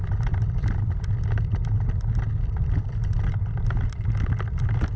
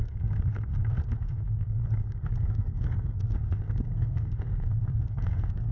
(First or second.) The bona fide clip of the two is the first